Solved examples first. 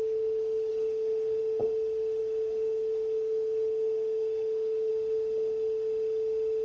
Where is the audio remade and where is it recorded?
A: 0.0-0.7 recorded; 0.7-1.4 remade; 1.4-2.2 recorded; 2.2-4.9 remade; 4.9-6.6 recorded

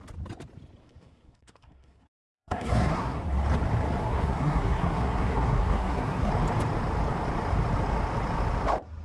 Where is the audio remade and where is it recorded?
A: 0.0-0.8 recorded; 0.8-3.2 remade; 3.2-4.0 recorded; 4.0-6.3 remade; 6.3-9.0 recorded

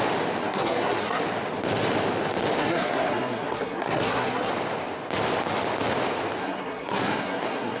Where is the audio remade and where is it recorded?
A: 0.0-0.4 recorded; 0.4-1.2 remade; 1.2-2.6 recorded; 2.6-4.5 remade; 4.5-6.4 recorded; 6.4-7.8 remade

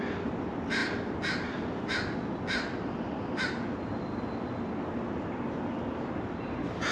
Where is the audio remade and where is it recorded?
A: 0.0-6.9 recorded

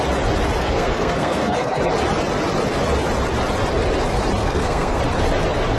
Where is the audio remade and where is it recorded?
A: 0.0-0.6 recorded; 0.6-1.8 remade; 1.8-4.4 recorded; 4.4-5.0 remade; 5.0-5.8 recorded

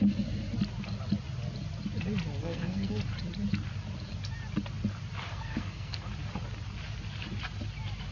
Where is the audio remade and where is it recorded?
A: 0.0-2.4 recorded; 2.4-3.0 remade; 3.0-5.3 recorded; 5.3-6.1 remade; 6.1-8.1 recorded